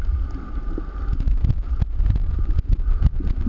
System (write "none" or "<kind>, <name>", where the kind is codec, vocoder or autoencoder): none